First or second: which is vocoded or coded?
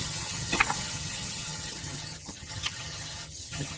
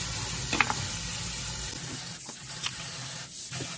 first